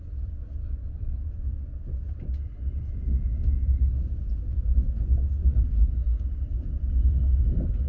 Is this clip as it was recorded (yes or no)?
yes